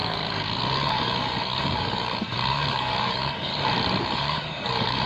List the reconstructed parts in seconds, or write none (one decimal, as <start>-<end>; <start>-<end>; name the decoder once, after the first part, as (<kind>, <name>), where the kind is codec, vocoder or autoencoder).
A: 0.0-3.5 (codec, DAC); 4.0-5.1